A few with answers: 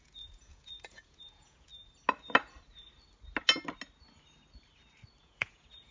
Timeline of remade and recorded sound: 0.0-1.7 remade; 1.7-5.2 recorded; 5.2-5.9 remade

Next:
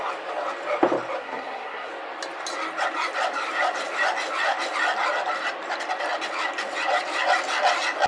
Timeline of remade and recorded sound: 0.0-1.2 recorded; 1.2-1.9 remade; 1.9-8.1 recorded

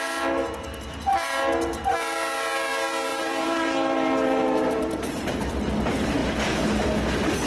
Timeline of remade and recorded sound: 0.0-3.1 recorded; 3.1-5.5 remade; 5.5-7.5 recorded

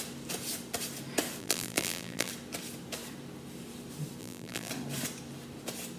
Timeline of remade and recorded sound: 0.0-1.4 recorded; 1.4-2.3 remade; 2.3-4.2 recorded; 4.2-4.7 remade; 4.7-6.0 recorded

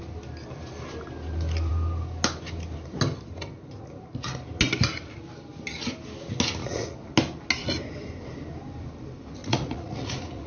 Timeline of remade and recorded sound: 0.0-6.6 recorded; 6.6-7.1 remade; 7.1-9.4 recorded; 9.4-10.5 remade

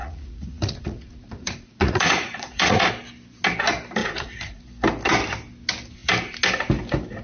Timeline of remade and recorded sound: 0.0-2.9 remade; 2.9-4.0 recorded; 4.0-4.6 remade; 4.6-7.2 recorded

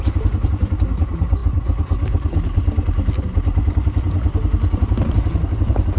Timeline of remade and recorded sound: 0.0-6.0 recorded